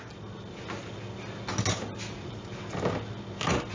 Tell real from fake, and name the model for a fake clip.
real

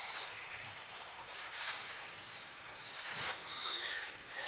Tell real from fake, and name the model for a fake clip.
fake, codec, DAC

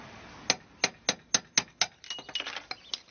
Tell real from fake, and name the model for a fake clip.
real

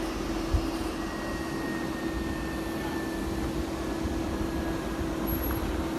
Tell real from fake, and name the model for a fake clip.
real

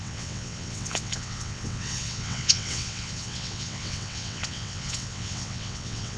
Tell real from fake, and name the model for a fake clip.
fake, vocoder, WaveNeXt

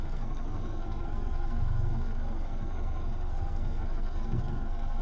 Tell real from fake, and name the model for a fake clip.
fake, codec, SNAC